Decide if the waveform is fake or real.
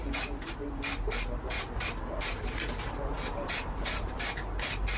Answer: real